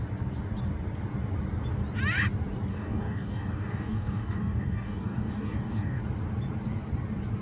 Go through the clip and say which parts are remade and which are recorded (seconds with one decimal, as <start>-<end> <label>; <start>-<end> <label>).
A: 0.0-2.7 recorded; 2.7-6.0 remade; 6.0-7.4 recorded